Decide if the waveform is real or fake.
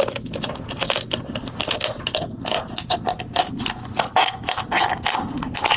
real